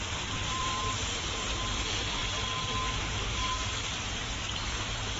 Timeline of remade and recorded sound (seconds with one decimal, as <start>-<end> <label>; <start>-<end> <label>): 0.0-2.2 remade; 2.2-3.3 recorded; 3.3-5.2 remade